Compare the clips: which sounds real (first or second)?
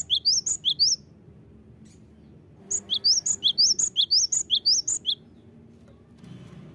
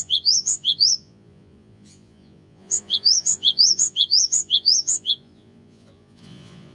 first